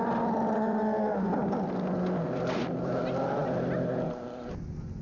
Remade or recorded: recorded